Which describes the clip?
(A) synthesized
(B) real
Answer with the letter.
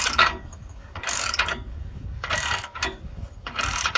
A